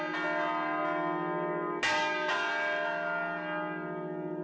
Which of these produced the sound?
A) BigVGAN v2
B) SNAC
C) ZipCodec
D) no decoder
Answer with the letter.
D